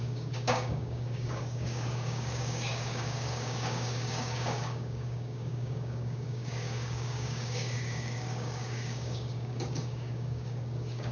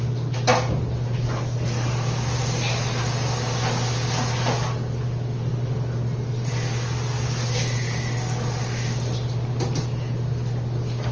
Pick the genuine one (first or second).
second